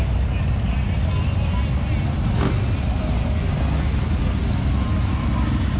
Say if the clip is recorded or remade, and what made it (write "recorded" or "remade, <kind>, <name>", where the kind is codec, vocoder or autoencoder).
recorded